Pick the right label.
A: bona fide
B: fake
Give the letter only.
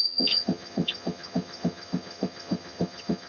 B